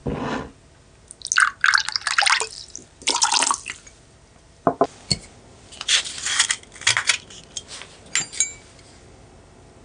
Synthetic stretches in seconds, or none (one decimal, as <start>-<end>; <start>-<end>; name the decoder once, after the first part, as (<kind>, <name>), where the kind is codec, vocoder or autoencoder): none